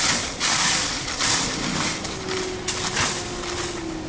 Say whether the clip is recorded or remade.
recorded